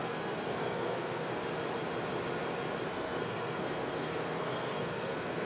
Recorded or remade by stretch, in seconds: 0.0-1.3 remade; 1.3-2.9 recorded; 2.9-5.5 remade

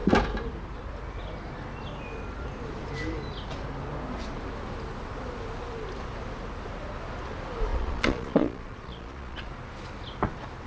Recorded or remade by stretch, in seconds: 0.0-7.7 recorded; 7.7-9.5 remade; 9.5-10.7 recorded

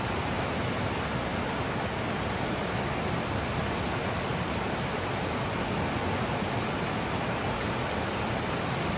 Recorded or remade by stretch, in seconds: 0.0-9.0 recorded

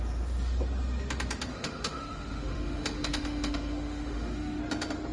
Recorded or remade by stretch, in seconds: 0.0-1.5 recorded; 1.5-4.6 remade; 4.6-5.1 recorded

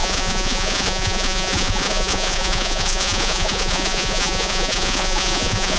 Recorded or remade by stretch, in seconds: 0.0-5.8 remade